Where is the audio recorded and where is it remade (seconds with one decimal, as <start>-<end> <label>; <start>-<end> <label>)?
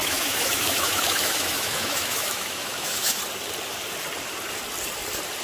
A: 0.0-3.2 remade; 3.2-5.4 recorded